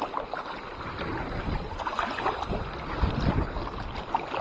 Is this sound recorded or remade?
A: recorded